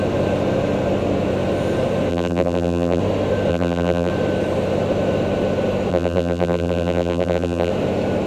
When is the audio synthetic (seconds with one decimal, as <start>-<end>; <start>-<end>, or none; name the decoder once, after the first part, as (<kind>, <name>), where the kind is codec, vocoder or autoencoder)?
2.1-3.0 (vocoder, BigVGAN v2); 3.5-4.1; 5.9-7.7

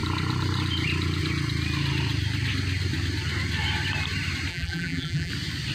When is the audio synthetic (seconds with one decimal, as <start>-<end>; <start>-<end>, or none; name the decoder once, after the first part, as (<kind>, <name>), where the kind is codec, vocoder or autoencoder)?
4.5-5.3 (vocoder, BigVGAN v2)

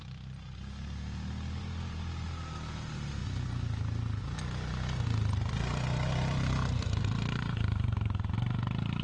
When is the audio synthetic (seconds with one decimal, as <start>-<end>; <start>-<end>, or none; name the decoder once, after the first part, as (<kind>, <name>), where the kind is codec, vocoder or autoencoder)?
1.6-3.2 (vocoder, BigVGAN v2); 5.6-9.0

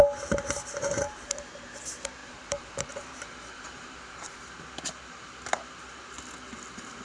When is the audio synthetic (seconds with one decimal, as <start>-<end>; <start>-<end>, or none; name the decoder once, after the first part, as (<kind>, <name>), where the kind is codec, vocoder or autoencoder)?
0.8-1.8 (vocoder, BigVGAN v2); 2.2-4.4